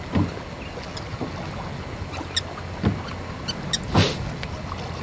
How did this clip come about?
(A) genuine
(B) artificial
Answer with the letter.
A